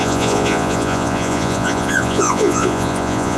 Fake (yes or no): yes